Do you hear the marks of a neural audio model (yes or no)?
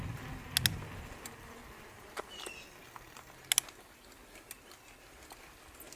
no